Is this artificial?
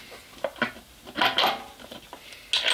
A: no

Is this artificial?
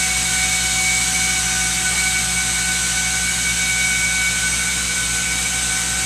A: no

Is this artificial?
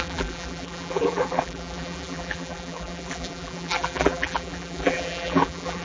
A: yes